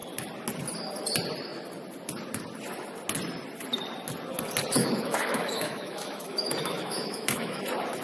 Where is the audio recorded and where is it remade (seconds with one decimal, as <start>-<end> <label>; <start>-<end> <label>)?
0.0-4.8 recorded; 4.8-7.6 remade; 7.6-8.0 recorded